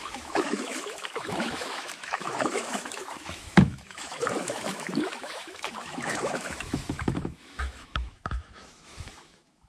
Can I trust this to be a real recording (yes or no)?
no